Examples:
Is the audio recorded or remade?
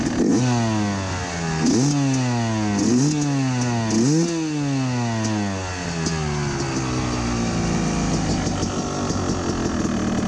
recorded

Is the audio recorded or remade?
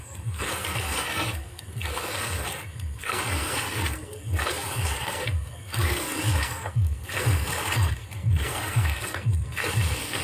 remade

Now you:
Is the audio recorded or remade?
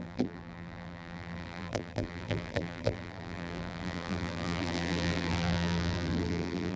remade